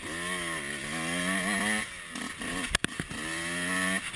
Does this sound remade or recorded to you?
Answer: recorded